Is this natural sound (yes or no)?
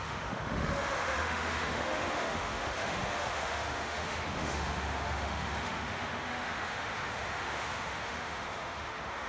no